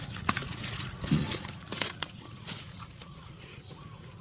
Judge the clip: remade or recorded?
remade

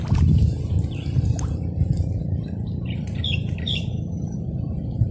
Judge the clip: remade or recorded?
remade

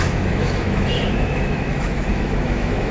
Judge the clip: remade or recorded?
remade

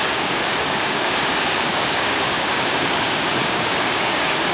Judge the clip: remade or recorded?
remade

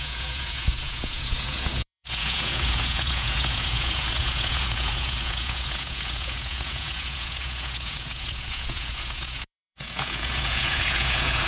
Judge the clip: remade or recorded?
remade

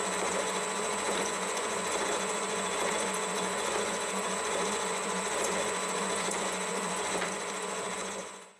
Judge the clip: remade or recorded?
remade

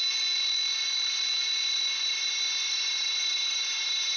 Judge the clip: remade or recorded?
recorded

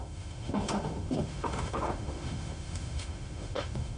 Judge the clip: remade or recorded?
remade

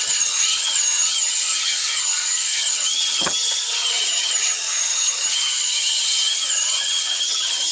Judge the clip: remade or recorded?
remade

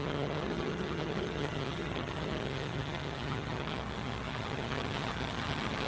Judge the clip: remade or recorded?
remade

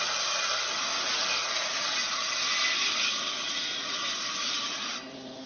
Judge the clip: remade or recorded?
recorded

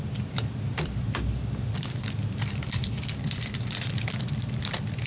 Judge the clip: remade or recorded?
remade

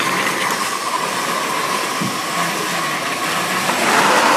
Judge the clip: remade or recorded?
recorded